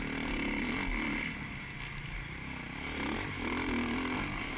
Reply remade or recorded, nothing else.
recorded